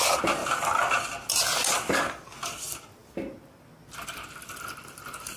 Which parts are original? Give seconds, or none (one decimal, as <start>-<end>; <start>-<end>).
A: 0.0-5.4